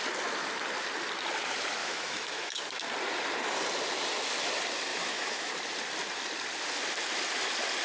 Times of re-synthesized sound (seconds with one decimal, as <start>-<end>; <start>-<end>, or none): 1.8-2.9; 4.9-5.5